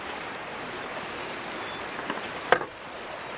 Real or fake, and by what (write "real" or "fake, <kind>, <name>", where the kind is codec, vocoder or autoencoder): real